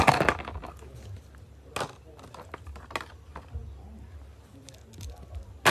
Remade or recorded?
recorded